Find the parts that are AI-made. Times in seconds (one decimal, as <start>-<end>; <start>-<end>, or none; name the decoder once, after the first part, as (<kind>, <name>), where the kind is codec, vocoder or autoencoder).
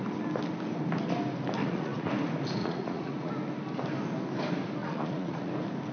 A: 1.6-2.1 (vocoder, Vocos); 2.6-3.3; 4.8-5.5